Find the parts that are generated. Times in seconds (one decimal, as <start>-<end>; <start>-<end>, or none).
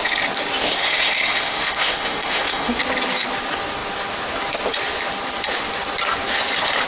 0.6-2.8